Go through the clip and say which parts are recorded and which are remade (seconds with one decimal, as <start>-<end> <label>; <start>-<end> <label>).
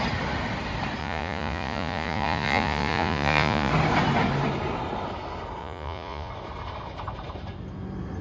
0.0-1.0 recorded; 1.0-3.7 remade; 3.7-5.6 recorded; 5.6-6.3 remade; 6.3-8.2 recorded